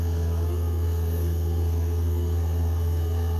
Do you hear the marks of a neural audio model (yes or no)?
yes